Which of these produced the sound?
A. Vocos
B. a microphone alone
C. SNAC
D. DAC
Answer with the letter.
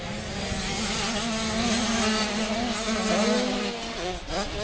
B